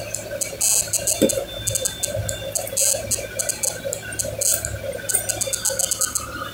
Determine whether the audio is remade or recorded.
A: recorded